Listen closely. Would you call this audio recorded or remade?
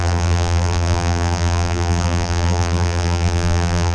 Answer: remade